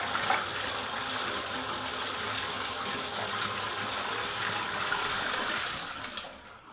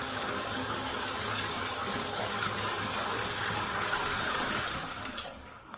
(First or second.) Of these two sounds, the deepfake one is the second